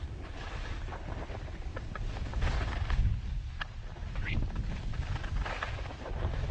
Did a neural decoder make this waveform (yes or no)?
no